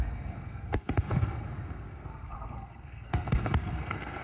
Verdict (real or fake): fake